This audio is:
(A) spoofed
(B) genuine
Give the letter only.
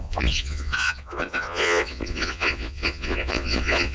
A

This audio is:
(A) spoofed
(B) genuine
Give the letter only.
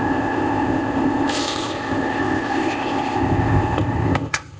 A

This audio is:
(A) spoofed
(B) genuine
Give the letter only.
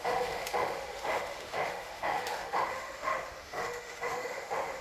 A